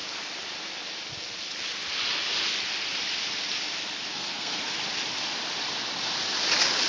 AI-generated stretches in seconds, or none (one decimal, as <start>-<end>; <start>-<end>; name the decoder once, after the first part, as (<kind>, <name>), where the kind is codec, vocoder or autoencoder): 4.1-4.7 (codec, SNAC)